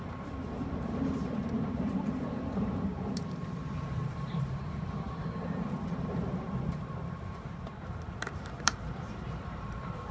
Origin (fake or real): fake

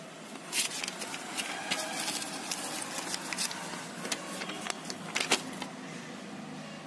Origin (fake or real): real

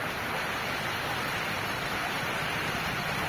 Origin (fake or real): real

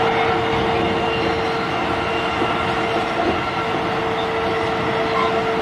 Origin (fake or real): real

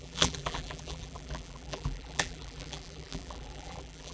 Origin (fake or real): fake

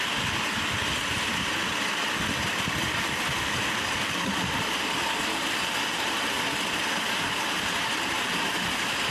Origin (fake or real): real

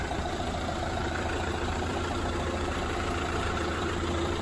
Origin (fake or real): fake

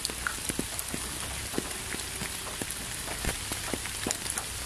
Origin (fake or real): real